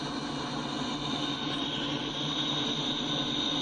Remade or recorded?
recorded